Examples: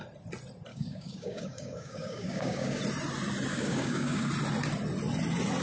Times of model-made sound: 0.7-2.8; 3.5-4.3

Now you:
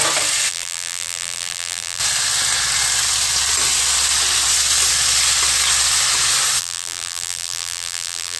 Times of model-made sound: 0.5-2.0; 6.6-8.4

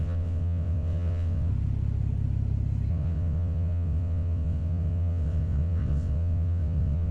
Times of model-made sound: 0.0-1.5; 2.9-7.1

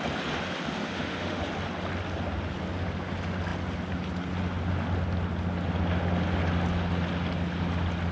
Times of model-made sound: 0.8-1.4